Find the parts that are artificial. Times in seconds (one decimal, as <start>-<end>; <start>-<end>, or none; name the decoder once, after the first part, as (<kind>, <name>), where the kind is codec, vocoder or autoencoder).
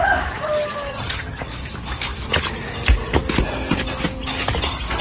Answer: 0.9-1.4 (vocoder, HiFi-GAN)